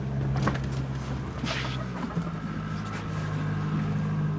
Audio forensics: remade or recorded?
recorded